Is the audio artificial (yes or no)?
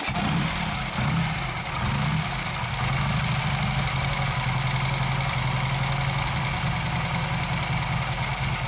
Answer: no